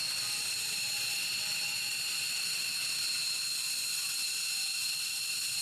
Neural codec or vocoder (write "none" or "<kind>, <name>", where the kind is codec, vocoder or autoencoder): none